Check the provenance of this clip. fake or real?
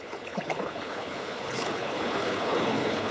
fake